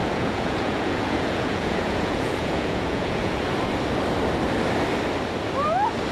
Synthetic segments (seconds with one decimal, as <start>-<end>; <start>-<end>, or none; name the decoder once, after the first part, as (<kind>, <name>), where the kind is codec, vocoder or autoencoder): 0.0-3.4 (vocoder, Vocos)